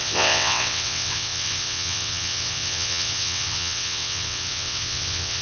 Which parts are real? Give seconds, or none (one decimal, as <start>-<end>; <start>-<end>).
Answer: none